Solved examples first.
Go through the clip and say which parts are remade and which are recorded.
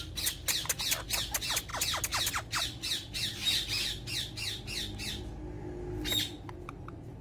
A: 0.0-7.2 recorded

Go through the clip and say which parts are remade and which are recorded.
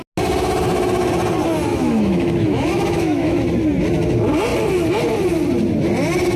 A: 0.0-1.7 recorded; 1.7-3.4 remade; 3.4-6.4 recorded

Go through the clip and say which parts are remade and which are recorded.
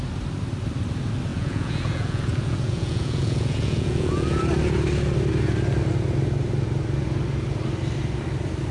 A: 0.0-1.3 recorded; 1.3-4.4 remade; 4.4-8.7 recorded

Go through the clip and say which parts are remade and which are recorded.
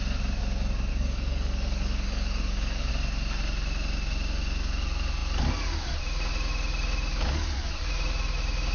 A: 0.0-0.9 recorded; 0.9-2.9 remade; 2.9-7.1 recorded; 7.1-7.9 remade; 7.9-8.7 recorded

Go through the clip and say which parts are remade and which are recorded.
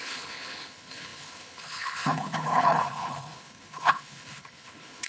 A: 0.0-5.1 remade